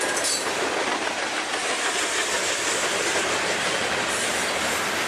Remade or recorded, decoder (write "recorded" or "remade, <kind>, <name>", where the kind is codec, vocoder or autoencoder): recorded